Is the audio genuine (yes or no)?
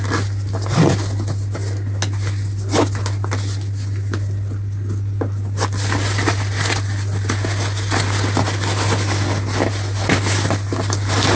yes